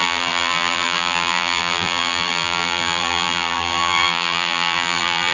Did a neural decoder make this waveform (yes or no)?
yes